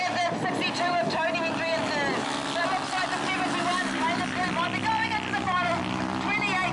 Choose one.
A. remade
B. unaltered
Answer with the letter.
B